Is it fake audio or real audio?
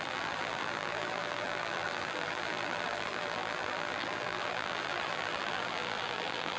fake